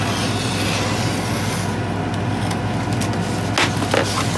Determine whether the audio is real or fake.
real